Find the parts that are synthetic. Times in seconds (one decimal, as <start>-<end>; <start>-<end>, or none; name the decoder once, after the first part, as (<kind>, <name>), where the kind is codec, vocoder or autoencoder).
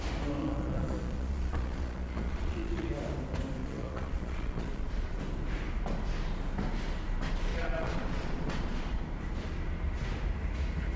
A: 0.4-2.9 (vocoder, Vocos); 3.6-5.2; 7.5-9.0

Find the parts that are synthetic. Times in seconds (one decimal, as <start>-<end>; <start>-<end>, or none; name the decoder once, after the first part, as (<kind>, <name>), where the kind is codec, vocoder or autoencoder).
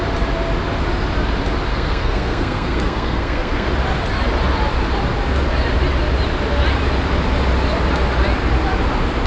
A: 1.7-3.7 (codec, SNAC)